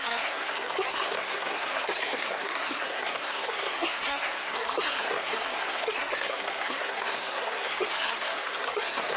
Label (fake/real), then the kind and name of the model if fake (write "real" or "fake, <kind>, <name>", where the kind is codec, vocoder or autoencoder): fake, codec, SNAC